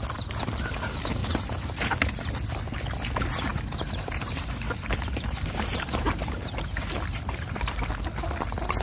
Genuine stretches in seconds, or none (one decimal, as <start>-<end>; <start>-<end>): 0.0-1.2; 1.9-3.5; 7.9-8.8